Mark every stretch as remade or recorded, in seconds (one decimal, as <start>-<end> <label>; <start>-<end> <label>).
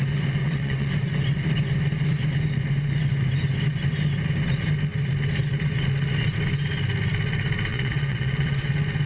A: 0.0-0.4 recorded; 0.4-0.9 remade; 0.9-7.7 recorded; 7.7-8.7 remade; 8.7-9.1 recorded